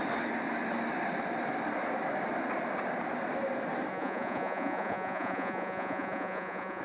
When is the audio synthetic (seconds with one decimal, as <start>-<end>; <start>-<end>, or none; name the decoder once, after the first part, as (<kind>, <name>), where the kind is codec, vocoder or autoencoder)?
3.9-6.8 (vocoder, Vocos)